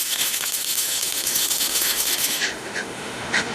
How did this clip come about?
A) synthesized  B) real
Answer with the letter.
A